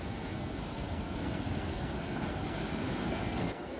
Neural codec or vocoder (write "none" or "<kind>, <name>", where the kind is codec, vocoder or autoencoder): codec, SNAC